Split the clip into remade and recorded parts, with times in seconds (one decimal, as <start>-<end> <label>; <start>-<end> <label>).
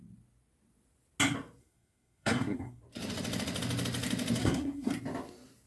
0.0-1.6 recorded; 1.6-2.8 remade; 2.8-4.4 recorded; 4.4-4.9 remade; 4.9-5.7 recorded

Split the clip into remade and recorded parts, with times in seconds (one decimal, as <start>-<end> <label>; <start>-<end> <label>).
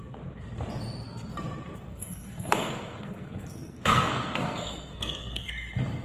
0.0-1.9 recorded; 1.9-5.5 remade; 5.5-6.0 recorded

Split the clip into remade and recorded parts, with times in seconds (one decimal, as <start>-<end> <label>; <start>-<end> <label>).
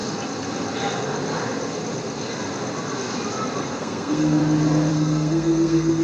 0.0-3.6 recorded; 3.6-4.4 remade; 4.4-4.9 recorded; 4.9-6.0 remade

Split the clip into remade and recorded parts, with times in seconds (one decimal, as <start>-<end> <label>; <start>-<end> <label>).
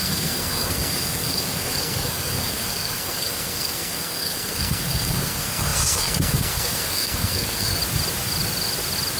0.0-7.8 remade; 7.8-9.2 recorded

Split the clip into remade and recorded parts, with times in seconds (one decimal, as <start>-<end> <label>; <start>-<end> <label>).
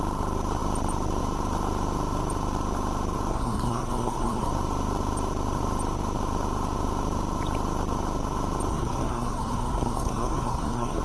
0.0-3.3 recorded; 3.3-4.5 remade; 4.5-8.7 recorded; 8.7-11.0 remade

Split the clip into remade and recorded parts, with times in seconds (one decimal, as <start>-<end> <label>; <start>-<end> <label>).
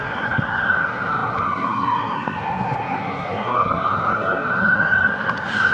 0.0-5.7 remade